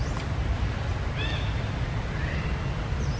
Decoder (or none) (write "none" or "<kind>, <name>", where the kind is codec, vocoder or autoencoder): none